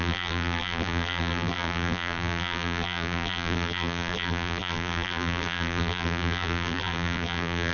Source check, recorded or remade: remade